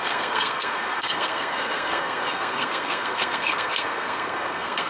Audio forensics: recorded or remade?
remade